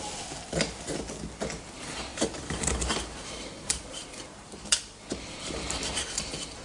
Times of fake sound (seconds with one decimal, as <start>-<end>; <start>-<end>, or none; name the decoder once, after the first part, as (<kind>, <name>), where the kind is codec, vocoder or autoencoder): 2.1-6.1 (vocoder, BigVGAN v2)